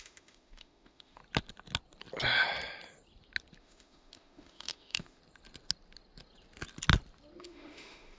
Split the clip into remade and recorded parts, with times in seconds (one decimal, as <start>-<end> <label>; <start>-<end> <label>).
0.0-1.2 remade; 1.2-3.6 recorded; 3.6-5.2 remade; 5.2-7.4 recorded; 7.4-8.2 remade